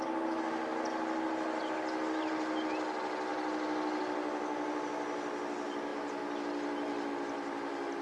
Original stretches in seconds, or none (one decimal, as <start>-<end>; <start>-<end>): 0.0-8.0